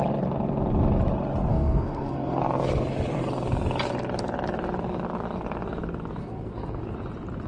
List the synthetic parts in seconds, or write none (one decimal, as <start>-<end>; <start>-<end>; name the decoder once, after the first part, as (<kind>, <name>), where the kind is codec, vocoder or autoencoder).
1.5-2.4 (codec, SNAC); 6.2-6.8